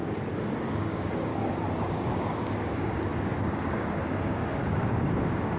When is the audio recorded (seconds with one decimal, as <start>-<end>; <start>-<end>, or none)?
0.0-0.6; 1.3-1.9